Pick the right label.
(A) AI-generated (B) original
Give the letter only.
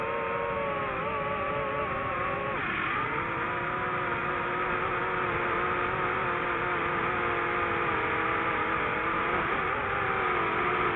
B